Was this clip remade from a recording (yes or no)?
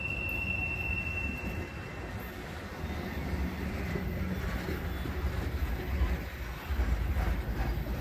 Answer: no